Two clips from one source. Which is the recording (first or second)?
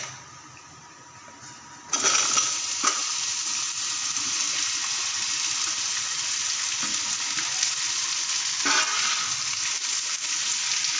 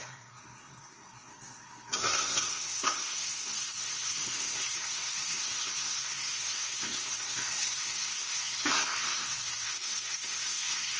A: first